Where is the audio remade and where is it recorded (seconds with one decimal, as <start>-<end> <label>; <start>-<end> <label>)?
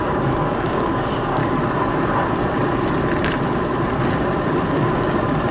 0.0-1.4 remade; 1.4-4.7 recorded; 4.7-5.5 remade